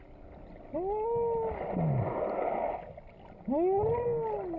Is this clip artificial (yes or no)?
no